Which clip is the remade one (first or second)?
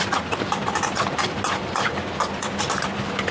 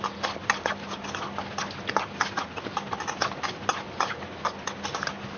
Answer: first